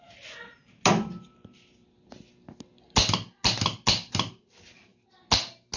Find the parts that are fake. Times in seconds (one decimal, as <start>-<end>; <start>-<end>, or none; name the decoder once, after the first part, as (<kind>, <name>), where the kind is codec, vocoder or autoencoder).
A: none